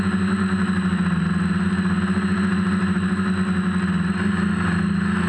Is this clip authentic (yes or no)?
yes